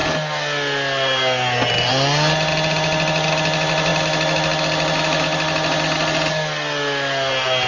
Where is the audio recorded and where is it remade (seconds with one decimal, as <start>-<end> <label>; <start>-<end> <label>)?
0.0-7.7 recorded